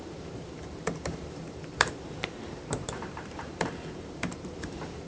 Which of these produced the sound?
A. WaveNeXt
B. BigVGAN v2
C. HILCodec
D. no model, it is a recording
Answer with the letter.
B